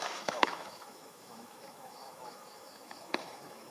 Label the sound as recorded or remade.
remade